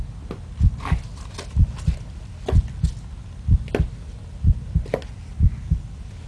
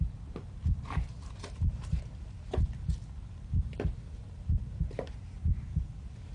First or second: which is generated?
second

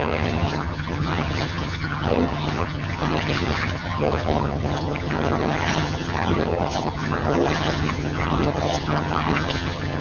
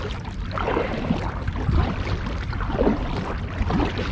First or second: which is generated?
first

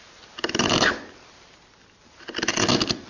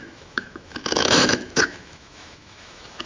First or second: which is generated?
second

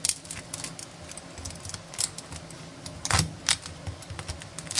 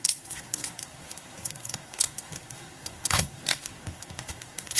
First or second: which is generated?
second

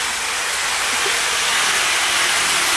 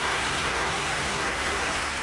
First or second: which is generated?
second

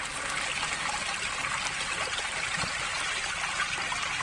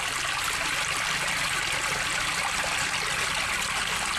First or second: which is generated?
first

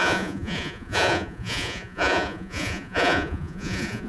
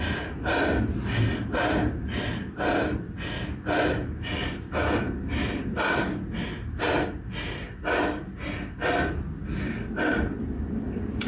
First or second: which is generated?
first